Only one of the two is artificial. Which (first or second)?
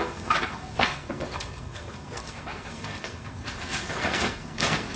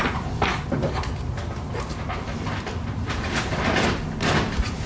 first